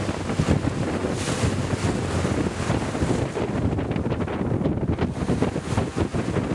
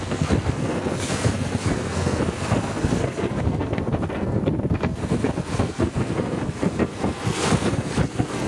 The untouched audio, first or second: first